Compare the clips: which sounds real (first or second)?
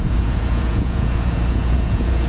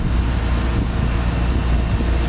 second